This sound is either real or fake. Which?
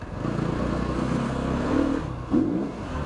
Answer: fake